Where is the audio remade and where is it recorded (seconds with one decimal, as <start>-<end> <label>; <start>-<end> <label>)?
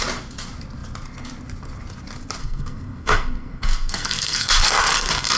0.0-2.4 recorded; 2.4-5.4 remade